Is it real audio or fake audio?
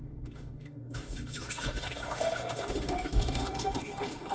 fake